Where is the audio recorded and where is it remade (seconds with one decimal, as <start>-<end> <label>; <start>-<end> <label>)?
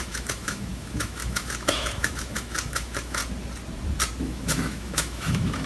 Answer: 0.0-3.2 remade; 3.2-4.2 recorded; 4.2-5.7 remade